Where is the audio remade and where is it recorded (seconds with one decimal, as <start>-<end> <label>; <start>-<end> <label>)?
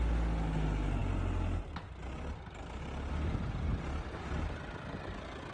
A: 0.0-5.5 recorded